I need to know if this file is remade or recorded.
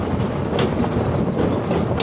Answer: recorded